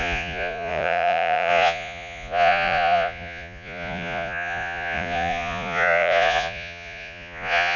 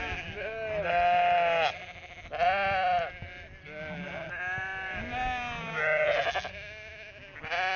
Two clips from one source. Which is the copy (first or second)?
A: first